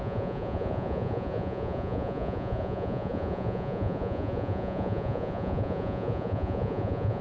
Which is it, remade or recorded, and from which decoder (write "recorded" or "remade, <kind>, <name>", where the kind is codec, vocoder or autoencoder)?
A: remade, vocoder, Vocos